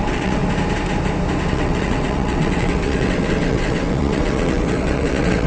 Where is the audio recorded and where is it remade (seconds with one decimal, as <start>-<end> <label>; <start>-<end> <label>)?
0.0-0.4 remade; 0.4-1.5 recorded; 1.5-5.5 remade